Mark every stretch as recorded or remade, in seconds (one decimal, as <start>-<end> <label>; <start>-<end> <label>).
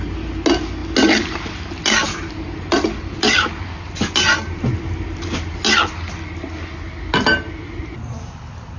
0.0-8.8 recorded